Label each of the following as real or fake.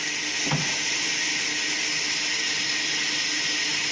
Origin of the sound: real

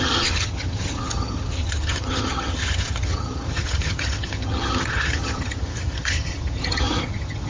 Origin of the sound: fake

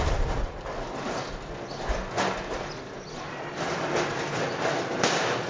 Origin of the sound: real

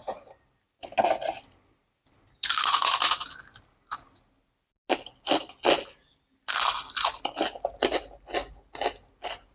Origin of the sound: real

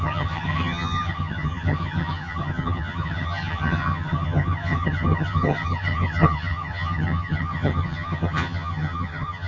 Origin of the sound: fake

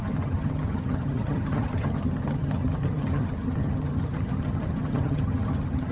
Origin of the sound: fake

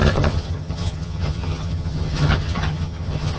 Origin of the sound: fake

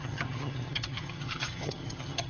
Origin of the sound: fake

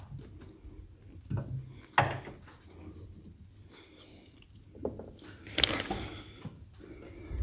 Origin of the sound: real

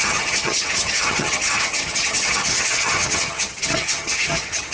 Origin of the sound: fake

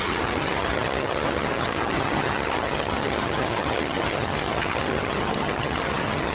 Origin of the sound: fake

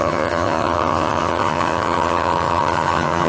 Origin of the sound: fake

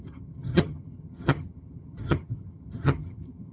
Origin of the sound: fake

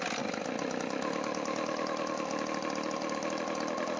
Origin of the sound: real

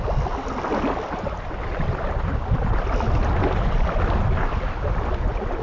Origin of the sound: real